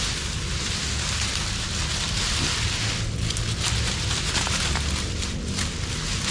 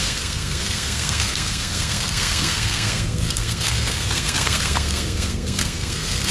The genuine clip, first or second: first